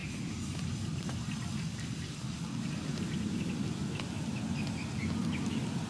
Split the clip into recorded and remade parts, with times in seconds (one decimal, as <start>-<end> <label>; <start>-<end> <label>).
0.0-3.5 remade; 3.5-5.9 recorded